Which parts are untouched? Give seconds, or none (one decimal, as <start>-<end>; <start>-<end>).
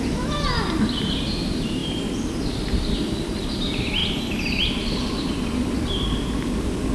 4.0-4.7